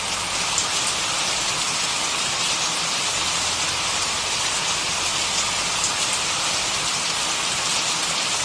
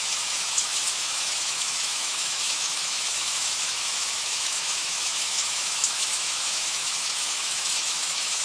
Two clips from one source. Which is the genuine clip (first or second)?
first